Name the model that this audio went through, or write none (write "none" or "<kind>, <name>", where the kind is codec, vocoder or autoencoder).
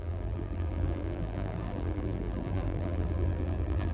vocoder, BigVGAN v2